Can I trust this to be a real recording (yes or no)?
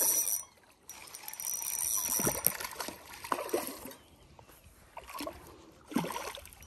yes